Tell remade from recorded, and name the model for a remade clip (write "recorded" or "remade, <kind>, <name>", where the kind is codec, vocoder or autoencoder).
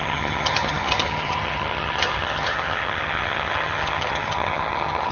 remade, vocoder, HiFi-GAN